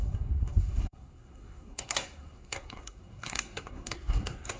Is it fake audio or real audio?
fake